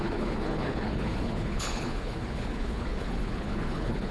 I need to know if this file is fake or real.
fake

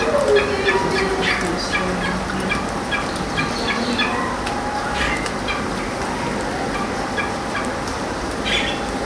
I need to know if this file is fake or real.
real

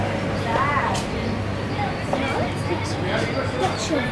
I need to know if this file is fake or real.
real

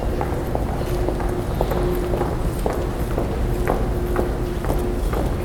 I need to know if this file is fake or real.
real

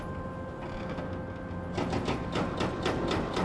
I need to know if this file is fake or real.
real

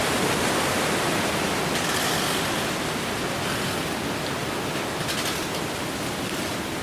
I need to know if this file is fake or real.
real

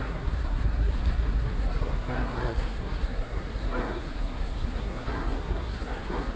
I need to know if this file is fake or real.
fake